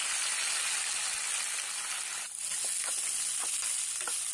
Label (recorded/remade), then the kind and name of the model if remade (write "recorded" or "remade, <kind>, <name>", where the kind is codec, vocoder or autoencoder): recorded